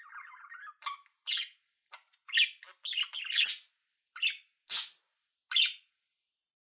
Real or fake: real